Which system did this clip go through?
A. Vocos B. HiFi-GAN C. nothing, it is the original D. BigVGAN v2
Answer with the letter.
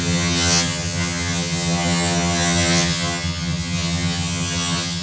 B